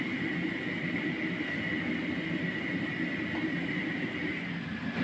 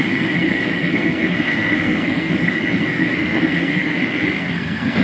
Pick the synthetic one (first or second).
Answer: second